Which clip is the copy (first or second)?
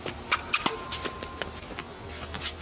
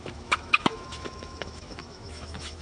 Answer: second